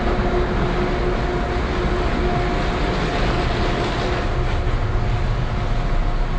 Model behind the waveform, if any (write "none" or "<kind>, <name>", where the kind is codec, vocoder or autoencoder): none